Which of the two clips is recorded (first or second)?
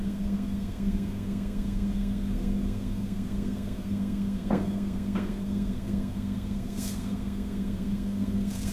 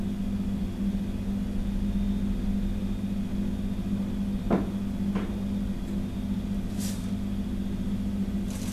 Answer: second